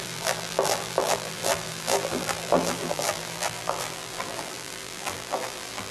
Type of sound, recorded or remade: remade